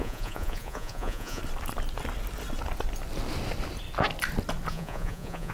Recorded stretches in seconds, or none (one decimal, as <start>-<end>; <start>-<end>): 1.4-4.7